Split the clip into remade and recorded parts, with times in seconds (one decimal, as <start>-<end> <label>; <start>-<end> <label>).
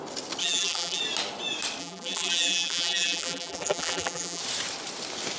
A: 0.0-0.4 recorded; 0.4-1.0 remade; 1.0-1.8 recorded; 1.8-4.4 remade; 4.4-5.4 recorded